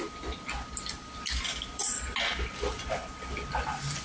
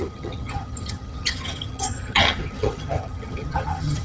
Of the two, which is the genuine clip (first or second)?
first